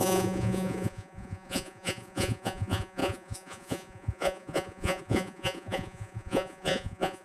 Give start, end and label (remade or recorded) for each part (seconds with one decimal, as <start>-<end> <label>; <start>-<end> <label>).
0.0-7.2 remade

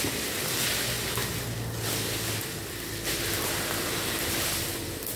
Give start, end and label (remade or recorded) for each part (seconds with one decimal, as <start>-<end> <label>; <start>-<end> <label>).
0.0-5.2 recorded